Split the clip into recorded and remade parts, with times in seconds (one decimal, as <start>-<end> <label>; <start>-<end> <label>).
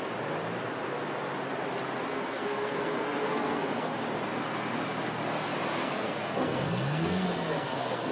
0.0-2.1 recorded; 2.1-4.0 remade; 4.0-5.8 recorded; 5.8-8.1 remade